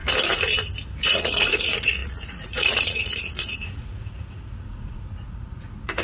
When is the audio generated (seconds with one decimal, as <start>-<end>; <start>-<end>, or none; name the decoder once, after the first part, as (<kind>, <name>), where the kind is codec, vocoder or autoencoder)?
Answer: 1.0-6.0 (vocoder, Vocos)

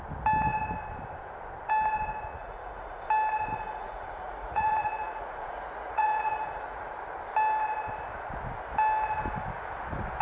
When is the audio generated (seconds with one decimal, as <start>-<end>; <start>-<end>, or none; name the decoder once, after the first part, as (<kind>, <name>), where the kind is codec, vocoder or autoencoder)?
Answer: 2.3-3.0 (vocoder, Vocos); 3.5-6.9

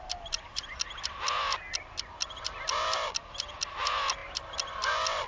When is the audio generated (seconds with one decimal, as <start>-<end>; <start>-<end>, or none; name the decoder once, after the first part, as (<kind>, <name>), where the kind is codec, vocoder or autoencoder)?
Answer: none

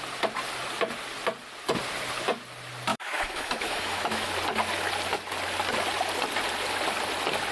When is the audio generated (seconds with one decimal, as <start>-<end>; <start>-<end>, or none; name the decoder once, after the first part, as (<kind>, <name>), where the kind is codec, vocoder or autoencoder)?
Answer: 2.9-4.3 (autoencoder, DAC-VAE)

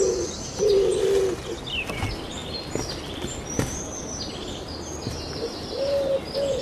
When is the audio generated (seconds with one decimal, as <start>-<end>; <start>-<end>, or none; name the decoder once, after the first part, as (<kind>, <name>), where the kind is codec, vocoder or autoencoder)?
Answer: none

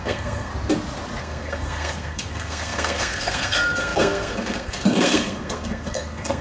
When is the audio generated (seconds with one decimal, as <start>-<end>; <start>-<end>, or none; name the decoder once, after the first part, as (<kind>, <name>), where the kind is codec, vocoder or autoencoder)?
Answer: 0.0-0.5 (codec, SNAC); 1.2-6.4